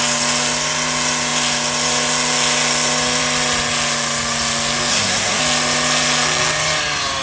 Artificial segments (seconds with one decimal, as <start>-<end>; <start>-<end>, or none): 4.9-5.4